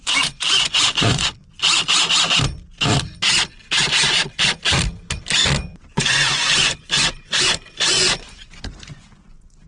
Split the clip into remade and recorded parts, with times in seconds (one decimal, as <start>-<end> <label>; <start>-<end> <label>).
0.0-1.6 remade; 1.6-5.9 recorded; 5.9-9.7 remade